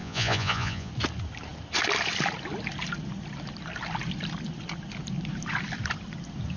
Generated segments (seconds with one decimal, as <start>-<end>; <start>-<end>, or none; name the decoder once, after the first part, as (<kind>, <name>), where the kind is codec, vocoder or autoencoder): 0.0-0.9 (vocoder, Vocos)